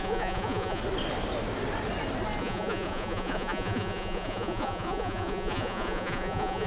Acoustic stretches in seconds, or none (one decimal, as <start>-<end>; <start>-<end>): 0.8-2.4